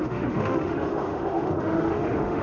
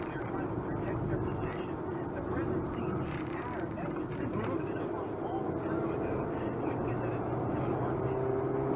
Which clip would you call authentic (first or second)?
second